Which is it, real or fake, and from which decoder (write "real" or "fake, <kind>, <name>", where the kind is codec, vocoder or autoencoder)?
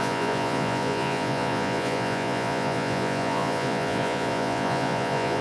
fake, vocoder, Vocos